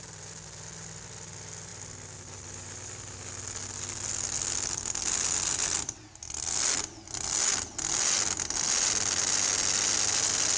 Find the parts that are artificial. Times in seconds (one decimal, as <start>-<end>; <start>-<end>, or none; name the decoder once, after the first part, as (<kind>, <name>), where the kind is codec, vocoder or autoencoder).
none